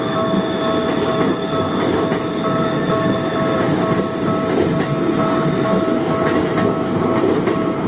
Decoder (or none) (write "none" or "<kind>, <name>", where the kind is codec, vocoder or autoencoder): none